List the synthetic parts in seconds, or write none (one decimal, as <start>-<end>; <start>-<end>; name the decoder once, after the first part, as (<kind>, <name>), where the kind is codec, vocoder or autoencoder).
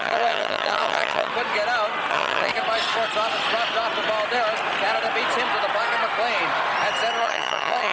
0.0-1.3 (vocoder, HiFi-GAN); 2.1-2.5; 7.2-7.9